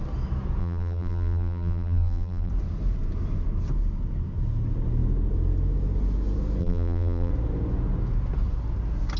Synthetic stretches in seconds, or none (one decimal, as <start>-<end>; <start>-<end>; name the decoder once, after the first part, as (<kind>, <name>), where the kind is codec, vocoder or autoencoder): 0.6-2.5 (vocoder, BigVGAN v2); 6.6-7.3